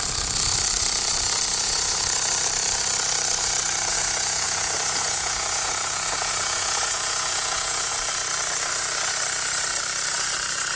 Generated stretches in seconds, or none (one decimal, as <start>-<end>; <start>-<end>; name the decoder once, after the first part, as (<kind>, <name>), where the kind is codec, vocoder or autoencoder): 1.5-2.0 (vocoder, Vocos); 3.9-7.9